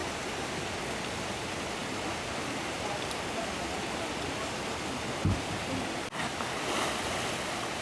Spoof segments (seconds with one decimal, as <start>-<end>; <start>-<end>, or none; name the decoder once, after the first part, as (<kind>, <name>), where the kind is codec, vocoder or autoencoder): none